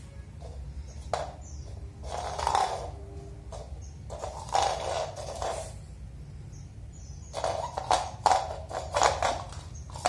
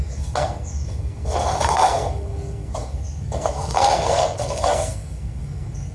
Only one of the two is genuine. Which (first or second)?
first